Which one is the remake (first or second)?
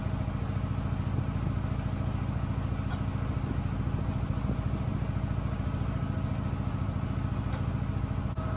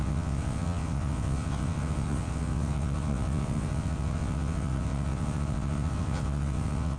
second